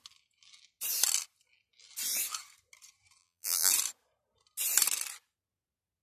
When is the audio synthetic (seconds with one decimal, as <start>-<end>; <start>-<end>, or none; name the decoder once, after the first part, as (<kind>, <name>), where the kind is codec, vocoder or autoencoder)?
3.2-3.7 (vocoder, BigVGAN v2)